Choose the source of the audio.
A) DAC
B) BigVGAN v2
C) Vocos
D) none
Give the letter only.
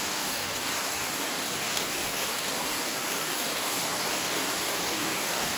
A